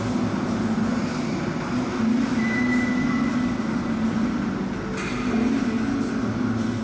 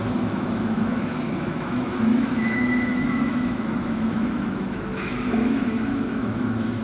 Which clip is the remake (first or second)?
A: second